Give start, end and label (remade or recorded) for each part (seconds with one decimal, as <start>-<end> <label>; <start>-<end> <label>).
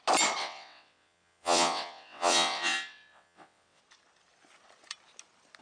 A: 0.0-0.4 recorded; 0.4-3.8 remade; 3.8-5.6 recorded